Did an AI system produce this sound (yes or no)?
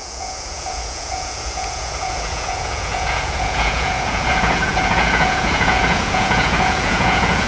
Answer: yes